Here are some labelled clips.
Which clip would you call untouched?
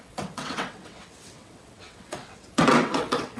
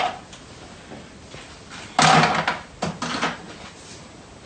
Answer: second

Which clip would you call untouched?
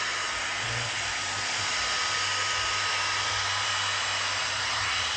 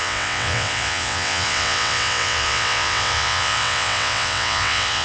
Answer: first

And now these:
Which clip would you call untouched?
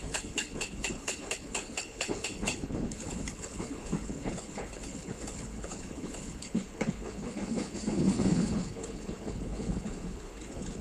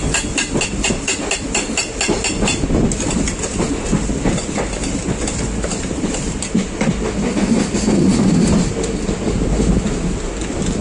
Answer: second